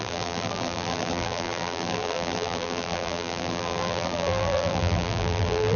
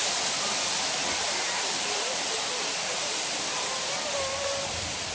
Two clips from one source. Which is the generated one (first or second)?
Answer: first